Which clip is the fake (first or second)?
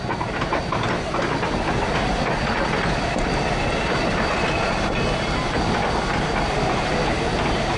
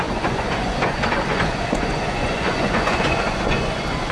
second